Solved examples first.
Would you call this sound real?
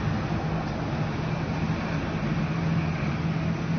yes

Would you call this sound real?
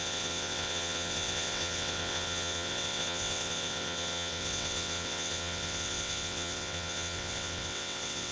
no